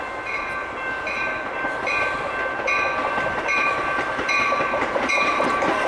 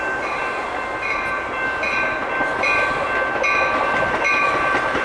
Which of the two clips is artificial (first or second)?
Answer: first